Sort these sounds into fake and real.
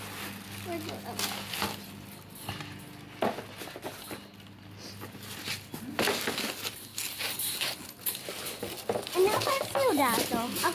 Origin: real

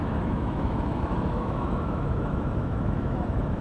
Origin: fake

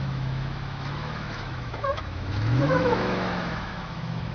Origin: fake